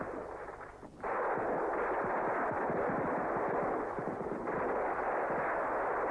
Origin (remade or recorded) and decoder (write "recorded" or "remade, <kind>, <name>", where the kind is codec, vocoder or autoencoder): recorded